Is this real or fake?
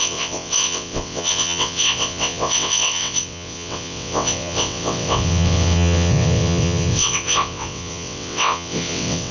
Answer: fake